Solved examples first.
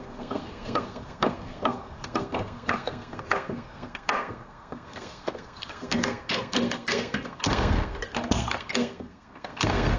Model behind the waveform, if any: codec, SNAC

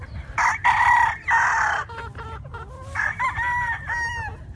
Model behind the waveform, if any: none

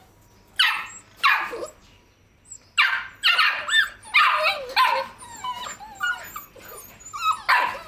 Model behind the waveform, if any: none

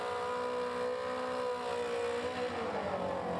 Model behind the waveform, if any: none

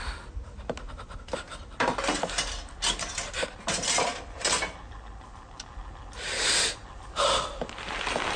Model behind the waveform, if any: none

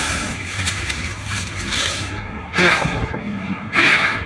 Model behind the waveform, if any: codec, SNAC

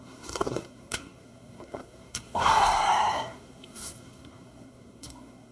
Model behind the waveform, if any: codec, SNAC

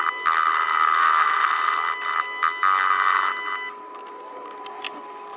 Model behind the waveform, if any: none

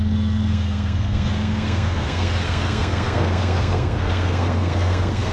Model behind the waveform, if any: codec, SNAC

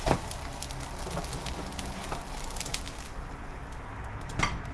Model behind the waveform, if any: none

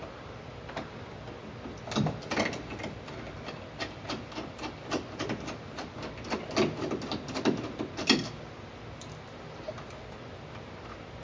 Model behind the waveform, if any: none